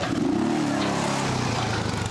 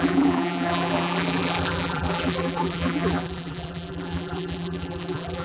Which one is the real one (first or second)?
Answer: first